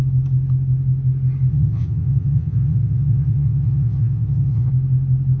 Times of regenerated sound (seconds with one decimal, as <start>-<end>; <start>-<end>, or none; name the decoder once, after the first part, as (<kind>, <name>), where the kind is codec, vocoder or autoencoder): 1.5-4.7 (vocoder, WaveNeXt)